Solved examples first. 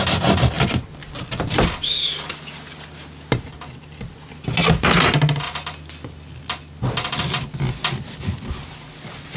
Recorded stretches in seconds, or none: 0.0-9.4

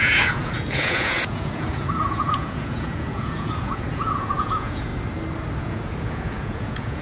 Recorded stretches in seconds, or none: 4.9-5.6

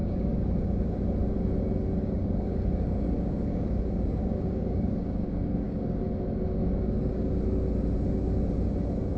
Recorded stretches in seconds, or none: 0.9-2.0; 6.0-6.6; 7.3-9.2

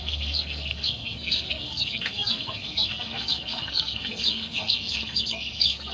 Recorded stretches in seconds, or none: none

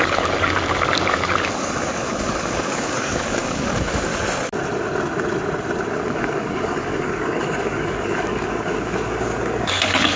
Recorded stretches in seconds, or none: 4.1-5.9

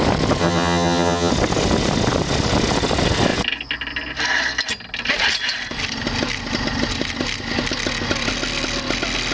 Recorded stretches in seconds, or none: 0.0-0.4; 1.3-9.3